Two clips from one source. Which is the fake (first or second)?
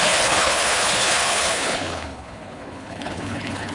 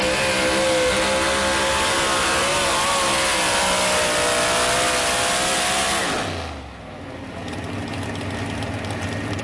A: first